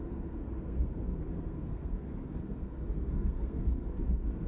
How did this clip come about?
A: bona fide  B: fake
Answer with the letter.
B